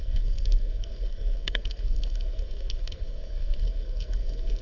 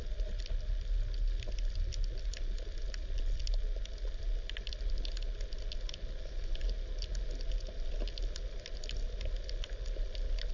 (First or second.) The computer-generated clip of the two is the first